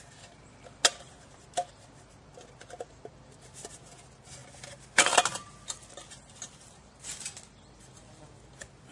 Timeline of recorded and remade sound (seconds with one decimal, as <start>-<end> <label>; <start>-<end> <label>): 0.0-8.9 recorded